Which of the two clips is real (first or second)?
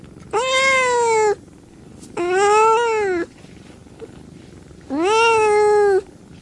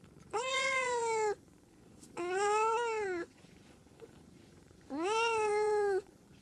first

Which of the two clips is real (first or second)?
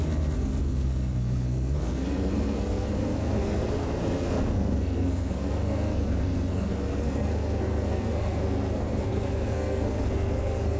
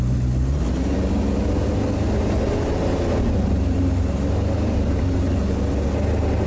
second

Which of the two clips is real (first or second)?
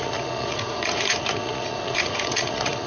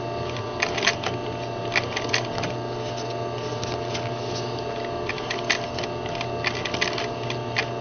second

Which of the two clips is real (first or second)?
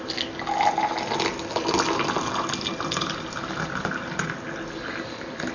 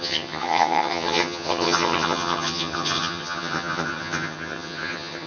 first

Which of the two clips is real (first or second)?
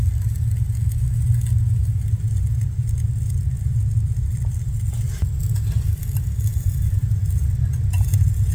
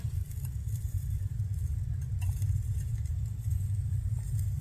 first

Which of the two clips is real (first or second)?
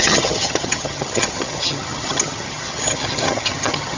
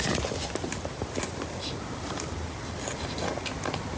second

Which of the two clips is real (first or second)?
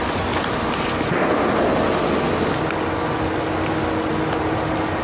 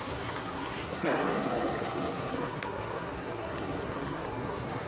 first